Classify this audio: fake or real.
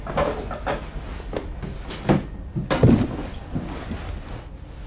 real